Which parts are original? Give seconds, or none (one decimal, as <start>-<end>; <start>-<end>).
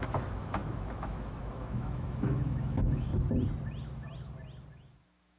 3.1-4.7